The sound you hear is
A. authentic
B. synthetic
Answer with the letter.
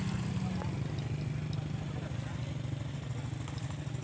A